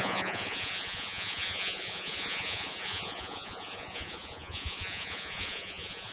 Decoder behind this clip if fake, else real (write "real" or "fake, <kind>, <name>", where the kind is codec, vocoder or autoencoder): fake, vocoder, Vocos